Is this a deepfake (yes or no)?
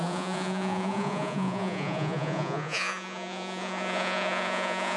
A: yes